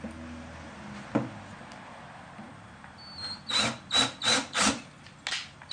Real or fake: real